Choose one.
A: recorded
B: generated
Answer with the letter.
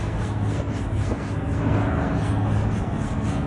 B